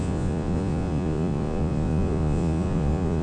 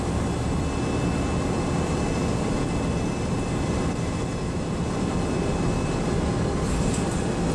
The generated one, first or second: first